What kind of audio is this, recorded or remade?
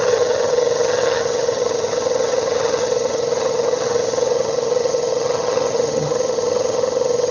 remade